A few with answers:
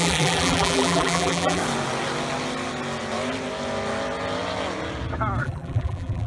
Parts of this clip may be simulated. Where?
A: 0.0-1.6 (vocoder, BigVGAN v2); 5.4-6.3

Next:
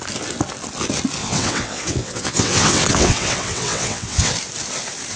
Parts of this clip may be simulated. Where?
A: 1.2-4.3 (vocoder, WaveNeXt)

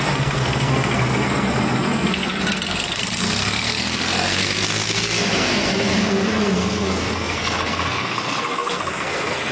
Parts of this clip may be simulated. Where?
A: 0.0-9.5 (codec, SNAC)

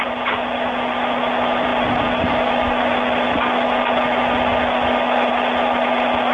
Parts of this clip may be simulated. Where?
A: none

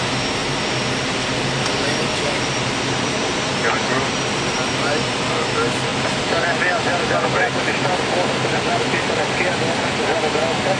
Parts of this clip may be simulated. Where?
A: 0.4-5.3 (vocoder, BigVGAN v2)

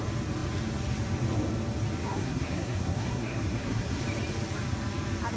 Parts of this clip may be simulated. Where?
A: 2.0-4.0 (codec, SNAC)